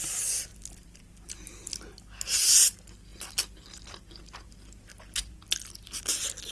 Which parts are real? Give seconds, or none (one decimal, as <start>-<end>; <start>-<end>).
0.0-6.5